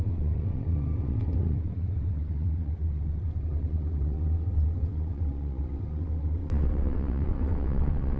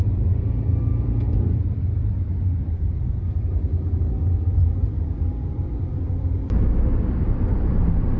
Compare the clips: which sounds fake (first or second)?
first